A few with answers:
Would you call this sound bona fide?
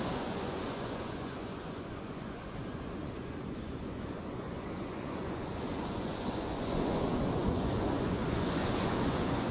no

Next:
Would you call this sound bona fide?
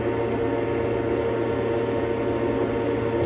yes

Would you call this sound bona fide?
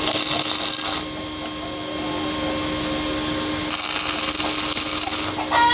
yes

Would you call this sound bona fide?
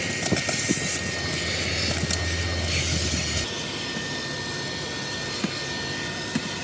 yes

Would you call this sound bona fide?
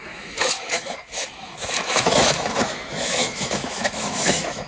no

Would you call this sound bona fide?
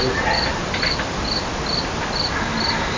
yes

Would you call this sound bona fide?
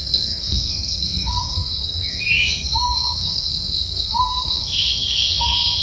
no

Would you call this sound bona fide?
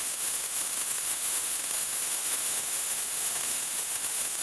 no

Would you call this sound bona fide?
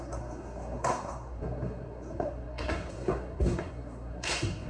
no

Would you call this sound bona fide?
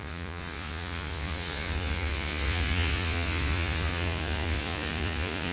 no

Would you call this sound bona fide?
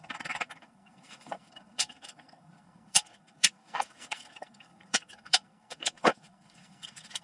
no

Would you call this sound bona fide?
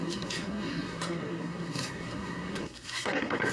no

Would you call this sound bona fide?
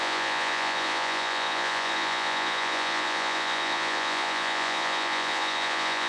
no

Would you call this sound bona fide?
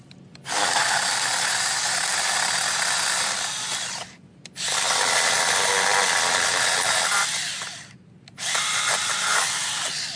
yes